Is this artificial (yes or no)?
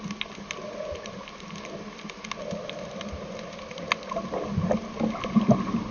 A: no